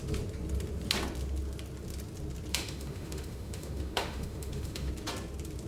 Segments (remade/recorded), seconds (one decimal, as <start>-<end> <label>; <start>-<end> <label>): 0.0-2.5 recorded; 2.5-4.9 remade; 4.9-5.7 recorded